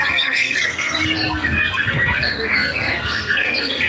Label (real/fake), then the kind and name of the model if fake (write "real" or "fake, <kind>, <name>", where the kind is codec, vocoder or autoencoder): fake, codec, SNAC